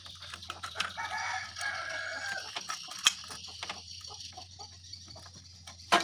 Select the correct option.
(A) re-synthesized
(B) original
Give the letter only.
B